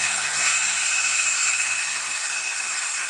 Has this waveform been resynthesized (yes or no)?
yes